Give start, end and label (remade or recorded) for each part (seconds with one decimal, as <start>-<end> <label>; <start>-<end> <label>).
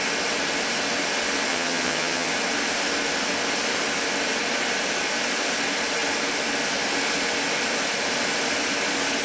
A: 0.0-1.5 recorded; 1.5-2.3 remade; 2.3-9.2 recorded